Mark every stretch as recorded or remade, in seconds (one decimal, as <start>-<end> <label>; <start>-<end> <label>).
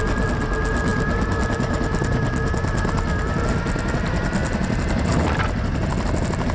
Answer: 0.0-6.5 recorded